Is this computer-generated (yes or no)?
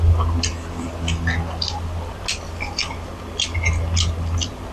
no